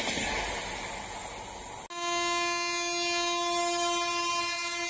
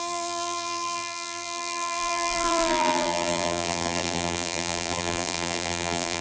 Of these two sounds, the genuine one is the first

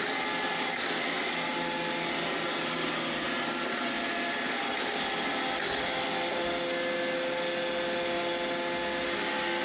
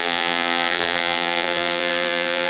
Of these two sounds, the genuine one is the first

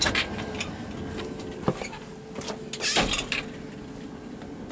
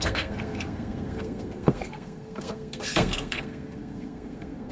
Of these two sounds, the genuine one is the first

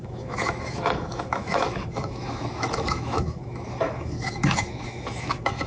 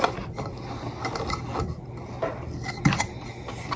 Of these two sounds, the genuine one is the second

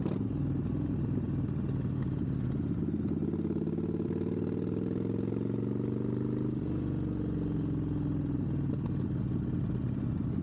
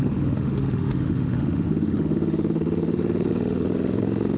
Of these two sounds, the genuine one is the first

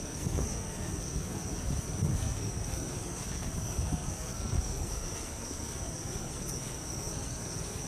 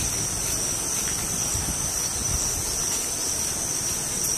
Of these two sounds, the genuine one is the second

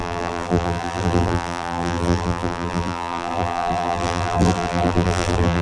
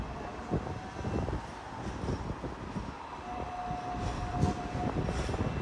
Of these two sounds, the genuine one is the second